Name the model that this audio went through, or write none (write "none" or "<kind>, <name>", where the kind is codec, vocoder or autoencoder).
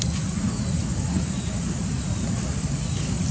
vocoder, BigVGAN v2